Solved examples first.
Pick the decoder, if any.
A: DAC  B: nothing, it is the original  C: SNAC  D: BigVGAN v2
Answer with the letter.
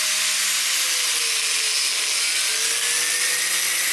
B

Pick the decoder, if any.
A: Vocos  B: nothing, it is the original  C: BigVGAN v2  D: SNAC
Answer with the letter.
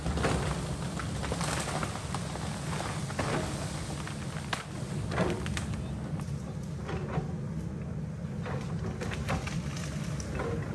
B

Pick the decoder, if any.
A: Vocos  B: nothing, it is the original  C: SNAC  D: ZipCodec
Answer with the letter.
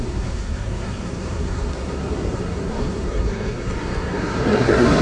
C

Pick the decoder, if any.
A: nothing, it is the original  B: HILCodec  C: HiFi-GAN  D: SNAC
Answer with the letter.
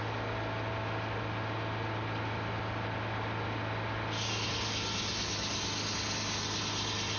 A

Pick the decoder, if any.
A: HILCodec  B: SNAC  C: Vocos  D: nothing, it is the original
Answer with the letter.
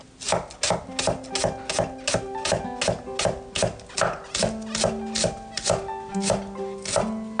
D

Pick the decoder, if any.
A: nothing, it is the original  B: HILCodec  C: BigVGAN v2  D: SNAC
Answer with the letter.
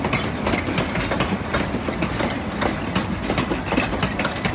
A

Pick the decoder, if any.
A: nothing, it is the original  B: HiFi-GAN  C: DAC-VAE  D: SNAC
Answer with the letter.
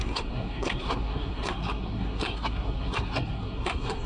D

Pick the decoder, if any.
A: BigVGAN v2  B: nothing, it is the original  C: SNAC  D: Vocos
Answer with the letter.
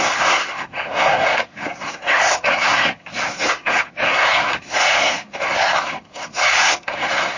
C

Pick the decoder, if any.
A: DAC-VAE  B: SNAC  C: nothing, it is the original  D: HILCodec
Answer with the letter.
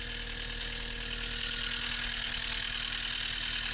C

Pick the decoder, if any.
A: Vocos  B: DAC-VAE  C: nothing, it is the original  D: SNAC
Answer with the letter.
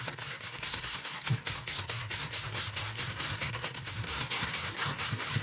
D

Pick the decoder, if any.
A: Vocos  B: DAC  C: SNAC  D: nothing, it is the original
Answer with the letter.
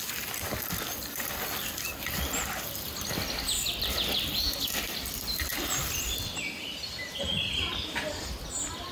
D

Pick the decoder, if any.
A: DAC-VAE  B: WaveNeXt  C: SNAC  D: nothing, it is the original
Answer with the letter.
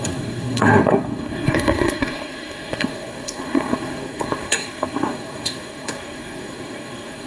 C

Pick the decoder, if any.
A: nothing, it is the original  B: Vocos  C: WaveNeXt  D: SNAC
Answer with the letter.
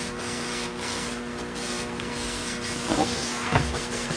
D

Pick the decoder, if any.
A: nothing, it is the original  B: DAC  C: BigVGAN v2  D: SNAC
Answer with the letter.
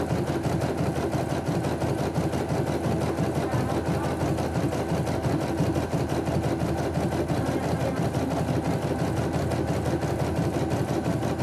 A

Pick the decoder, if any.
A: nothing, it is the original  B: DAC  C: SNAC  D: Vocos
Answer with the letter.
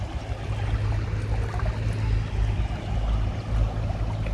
A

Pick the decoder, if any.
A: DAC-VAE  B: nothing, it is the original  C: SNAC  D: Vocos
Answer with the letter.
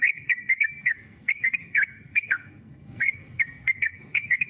C